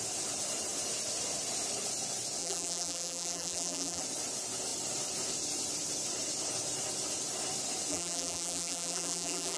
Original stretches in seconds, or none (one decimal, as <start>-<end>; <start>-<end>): 0.0-2.4; 4.0-7.9